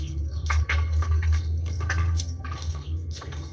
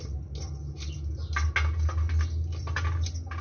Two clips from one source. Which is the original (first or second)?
second